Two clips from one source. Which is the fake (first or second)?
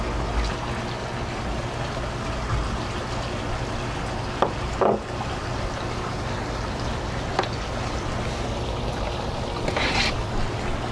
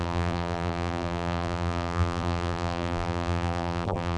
second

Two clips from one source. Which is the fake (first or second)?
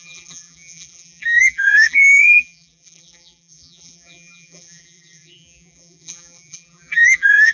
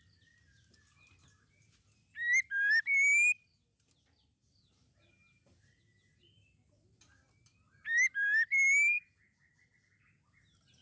first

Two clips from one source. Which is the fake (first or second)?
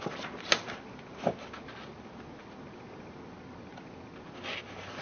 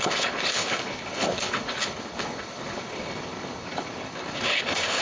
second